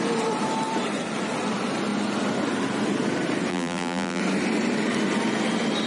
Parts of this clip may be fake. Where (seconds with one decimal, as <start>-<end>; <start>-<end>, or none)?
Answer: 3.5-4.2